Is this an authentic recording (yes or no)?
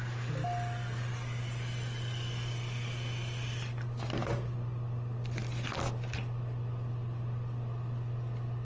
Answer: yes